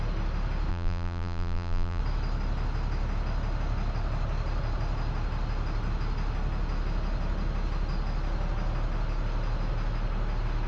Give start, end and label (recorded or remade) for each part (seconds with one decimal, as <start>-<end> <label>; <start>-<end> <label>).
0.0-0.7 recorded; 0.7-2.0 remade; 2.0-10.7 recorded